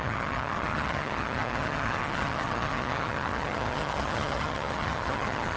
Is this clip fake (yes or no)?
yes